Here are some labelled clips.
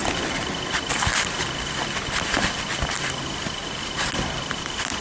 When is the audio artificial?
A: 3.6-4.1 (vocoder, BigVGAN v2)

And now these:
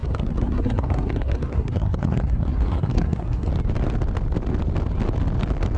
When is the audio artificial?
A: 0.0-3.5 (codec, SNAC)

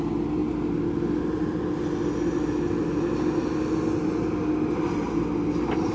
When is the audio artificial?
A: none

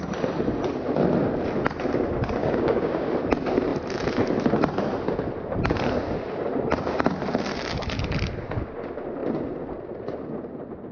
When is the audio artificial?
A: 2.4-3.1 (codec, DAC)

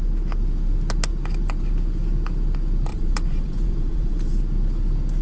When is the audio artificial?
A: 2.9-4.4 (vocoder, BigVGAN v2)